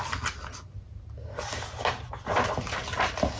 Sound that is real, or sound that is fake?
real